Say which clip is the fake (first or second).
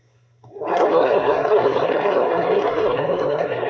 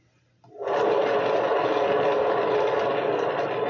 first